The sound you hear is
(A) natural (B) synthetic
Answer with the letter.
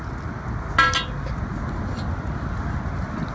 A